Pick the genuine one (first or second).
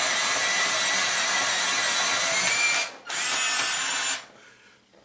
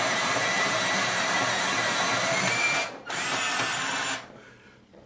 first